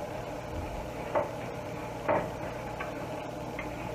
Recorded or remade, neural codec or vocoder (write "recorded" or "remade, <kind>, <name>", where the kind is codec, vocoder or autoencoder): recorded